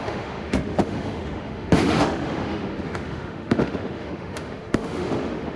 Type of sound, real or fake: fake